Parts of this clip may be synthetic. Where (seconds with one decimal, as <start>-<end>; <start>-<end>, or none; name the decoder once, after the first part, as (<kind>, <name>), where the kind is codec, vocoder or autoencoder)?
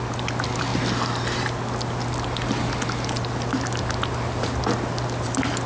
none